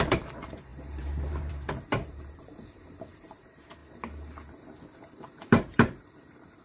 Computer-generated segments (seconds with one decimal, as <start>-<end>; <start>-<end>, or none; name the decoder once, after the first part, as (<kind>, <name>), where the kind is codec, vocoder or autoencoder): 0.0-3.8 (vocoder, BigVGAN v2); 5.1-6.6

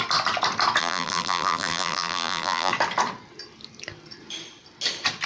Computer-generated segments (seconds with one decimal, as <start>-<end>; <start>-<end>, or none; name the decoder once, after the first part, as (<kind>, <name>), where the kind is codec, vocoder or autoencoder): 0.8-2.7 (vocoder, BigVGAN v2)

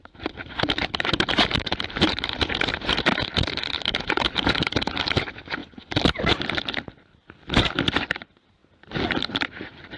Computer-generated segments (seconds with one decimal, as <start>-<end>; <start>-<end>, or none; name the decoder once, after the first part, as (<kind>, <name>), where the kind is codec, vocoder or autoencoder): 0.0-5.6 (vocoder, BigVGAN v2); 8.1-8.6; 9.2-10.0

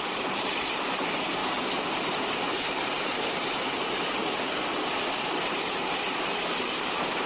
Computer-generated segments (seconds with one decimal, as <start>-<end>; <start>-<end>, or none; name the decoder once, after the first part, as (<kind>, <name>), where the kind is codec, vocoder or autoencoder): 0.0-1.4 (vocoder, BigVGAN v2); 2.5-4.2; 5.1-7.3

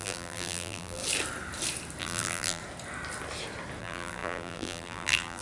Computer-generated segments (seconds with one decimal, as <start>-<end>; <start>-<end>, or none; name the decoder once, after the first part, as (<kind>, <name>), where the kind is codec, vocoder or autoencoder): 0.0-1.0 (vocoder, BigVGAN v2); 2.0-2.6; 3.8-5.4

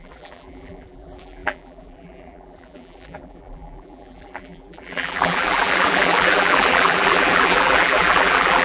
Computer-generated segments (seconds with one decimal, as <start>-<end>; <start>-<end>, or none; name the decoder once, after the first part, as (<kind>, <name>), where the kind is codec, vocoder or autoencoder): 0.0-8.6 (vocoder, BigVGAN v2)

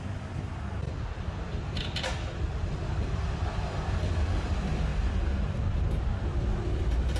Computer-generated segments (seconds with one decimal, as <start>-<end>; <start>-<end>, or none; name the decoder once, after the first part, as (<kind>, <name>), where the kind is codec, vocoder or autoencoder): 0.0-4.9 (vocoder, BigVGAN v2); 6.0-7.2

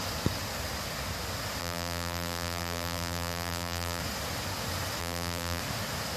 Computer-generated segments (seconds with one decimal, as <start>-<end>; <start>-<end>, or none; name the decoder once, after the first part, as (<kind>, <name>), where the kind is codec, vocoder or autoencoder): 1.6-4.0 (vocoder, BigVGAN v2); 5.0-5.6